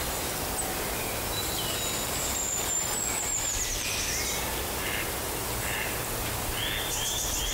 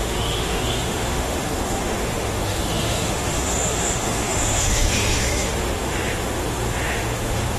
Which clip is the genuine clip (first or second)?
first